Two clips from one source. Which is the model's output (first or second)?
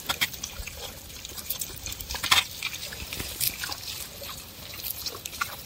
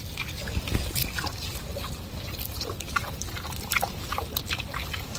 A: first